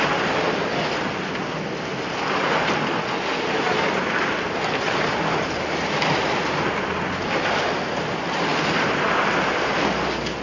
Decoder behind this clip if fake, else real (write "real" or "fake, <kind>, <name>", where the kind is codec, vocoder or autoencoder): real